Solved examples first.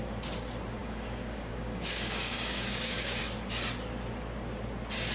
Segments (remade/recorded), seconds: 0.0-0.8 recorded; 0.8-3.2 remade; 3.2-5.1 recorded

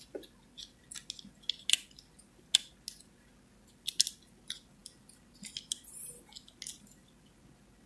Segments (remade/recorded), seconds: 0.0-7.9 recorded

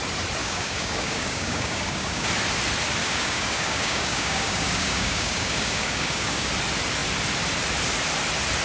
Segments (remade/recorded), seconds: 0.0-0.4 recorded; 0.4-2.3 remade; 2.3-3.0 recorded; 3.0-6.5 remade; 6.5-8.6 recorded

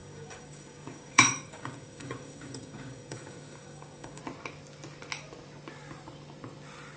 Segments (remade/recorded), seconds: 0.0-4.2 remade; 4.2-7.0 recorded

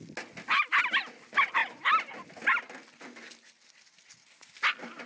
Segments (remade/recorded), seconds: 0.0-5.1 recorded

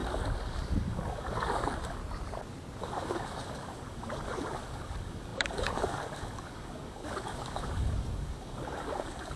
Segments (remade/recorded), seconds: 0.0-2.0 remade; 2.0-2.8 recorded; 2.8-9.4 remade

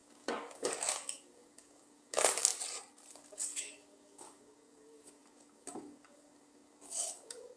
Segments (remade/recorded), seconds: 0.0-2.5 remade; 2.5-3.1 recorded; 3.1-7.6 remade

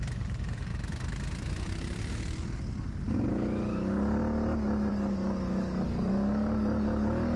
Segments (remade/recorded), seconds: 0.0-0.7 remade; 0.7-3.3 recorded; 3.3-4.2 remade; 4.2-4.9 recorded; 4.9-7.4 remade